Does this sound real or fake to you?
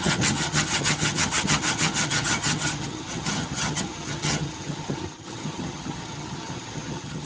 fake